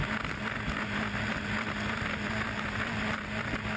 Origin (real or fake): real